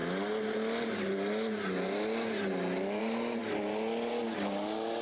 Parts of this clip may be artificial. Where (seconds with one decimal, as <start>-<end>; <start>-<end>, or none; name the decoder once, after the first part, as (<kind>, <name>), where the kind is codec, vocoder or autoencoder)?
none